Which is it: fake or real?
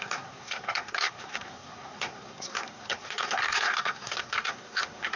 fake